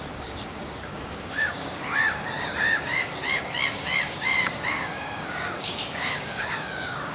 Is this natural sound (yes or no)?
no